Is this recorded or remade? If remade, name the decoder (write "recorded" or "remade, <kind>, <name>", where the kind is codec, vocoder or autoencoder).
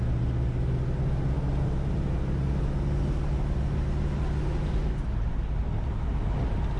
recorded